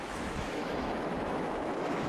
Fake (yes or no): yes